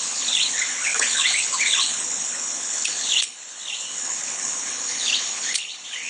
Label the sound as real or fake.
fake